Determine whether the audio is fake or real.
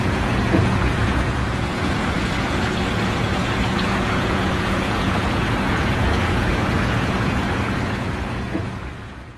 fake